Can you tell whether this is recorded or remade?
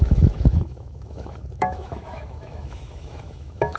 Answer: remade